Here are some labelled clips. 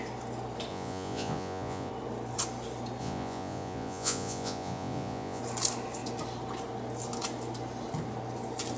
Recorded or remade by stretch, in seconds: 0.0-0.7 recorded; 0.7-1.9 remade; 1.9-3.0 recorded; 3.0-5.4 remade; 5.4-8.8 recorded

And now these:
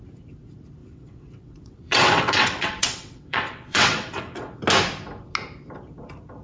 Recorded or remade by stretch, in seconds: 0.0-0.8 recorded; 0.8-4.6 remade; 4.6-6.4 recorded

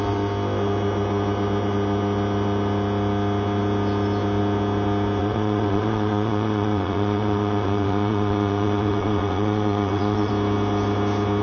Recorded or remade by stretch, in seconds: 0.0-5.2 recorded; 5.2-10.3 remade; 10.3-11.4 recorded